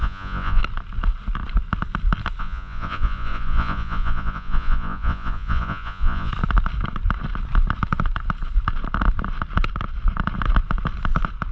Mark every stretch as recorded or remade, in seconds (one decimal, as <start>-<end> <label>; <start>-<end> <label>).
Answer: 0.0-0.6 remade; 0.6-2.4 recorded; 2.4-6.3 remade; 6.3-11.5 recorded